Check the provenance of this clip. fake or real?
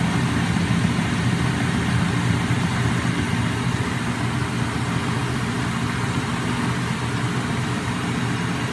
real